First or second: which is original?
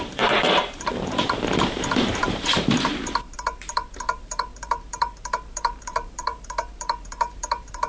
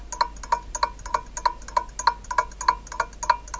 second